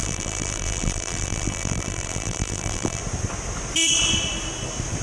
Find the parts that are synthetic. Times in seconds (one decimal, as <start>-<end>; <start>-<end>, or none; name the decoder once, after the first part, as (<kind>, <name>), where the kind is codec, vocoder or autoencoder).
0.0-3.0 (vocoder, BigVGAN v2)